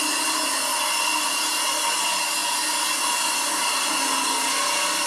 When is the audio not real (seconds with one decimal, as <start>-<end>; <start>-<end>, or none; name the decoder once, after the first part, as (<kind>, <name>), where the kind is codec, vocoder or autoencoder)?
none